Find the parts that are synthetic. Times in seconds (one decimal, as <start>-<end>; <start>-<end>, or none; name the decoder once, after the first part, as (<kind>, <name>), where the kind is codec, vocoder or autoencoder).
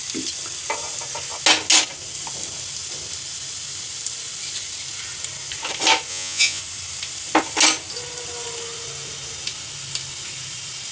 6.1-6.6 (vocoder, Vocos)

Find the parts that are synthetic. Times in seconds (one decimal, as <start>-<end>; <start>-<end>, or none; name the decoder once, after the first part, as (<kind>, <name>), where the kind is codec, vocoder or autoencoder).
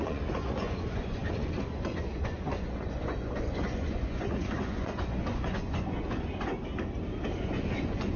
0.0-6.5 (vocoder, Vocos); 7.4-8.2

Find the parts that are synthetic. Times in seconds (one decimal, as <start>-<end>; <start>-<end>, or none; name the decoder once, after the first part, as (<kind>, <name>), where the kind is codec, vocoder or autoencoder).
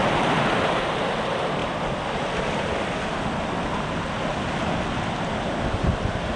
none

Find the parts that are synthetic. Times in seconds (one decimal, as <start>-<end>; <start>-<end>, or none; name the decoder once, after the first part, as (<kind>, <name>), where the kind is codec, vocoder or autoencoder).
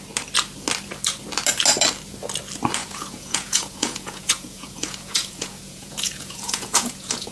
2.8-7.3 (vocoder, Vocos)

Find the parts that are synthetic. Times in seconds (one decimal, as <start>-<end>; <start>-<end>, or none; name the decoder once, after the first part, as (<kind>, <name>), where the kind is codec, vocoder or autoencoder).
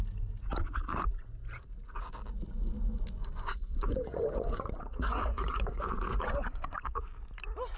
3.2-7.0 (vocoder, Vocos)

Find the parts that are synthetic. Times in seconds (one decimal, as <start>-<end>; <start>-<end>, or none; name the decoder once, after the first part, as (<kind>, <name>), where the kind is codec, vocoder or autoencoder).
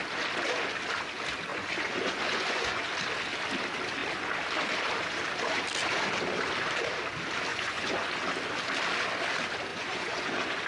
1.5-2.8 (vocoder, Vocos); 7.5-8.1; 9.7-10.7